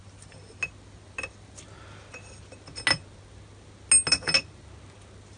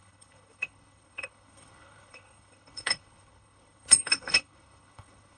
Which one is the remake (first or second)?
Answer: second